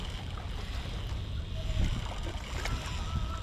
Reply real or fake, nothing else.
real